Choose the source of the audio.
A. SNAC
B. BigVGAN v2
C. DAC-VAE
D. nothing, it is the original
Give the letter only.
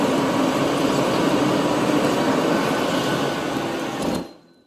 D